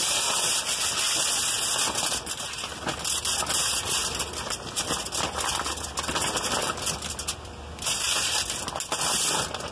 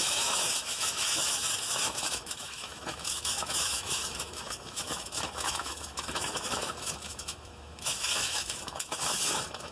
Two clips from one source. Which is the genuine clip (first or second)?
first